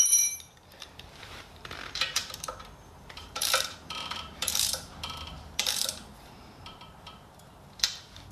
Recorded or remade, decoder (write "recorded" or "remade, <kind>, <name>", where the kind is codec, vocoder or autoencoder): remade, vocoder, BigVGAN v2